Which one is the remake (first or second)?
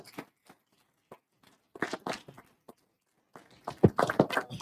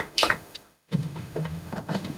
second